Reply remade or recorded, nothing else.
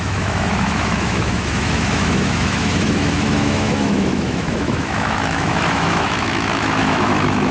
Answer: remade